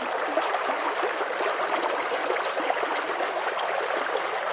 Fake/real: real